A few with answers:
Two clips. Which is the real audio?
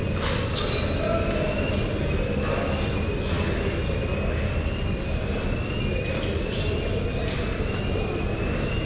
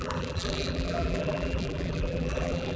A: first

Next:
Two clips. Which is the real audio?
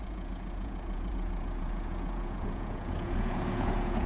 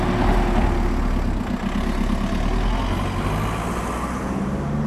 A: second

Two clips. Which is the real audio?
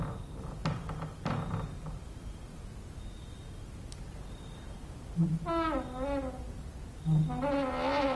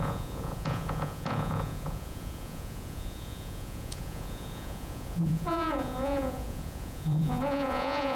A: first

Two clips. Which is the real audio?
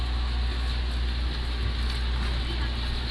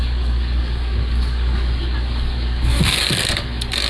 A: first